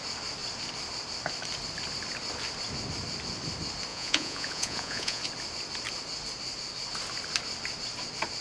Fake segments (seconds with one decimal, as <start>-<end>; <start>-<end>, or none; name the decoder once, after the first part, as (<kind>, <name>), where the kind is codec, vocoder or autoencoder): 3.9-5.2 (vocoder, Vocos)